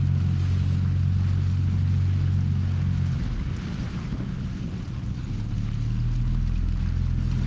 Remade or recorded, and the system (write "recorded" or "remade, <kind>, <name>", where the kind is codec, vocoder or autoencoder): recorded